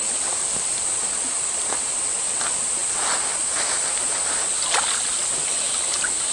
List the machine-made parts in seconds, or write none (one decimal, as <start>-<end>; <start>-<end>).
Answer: none